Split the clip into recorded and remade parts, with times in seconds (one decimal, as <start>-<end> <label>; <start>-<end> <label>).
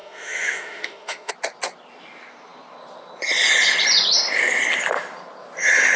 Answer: 0.0-1.3 remade; 1.3-6.0 recorded